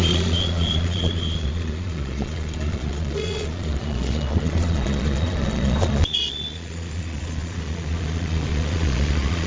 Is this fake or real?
fake